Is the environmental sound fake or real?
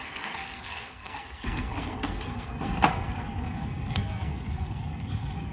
fake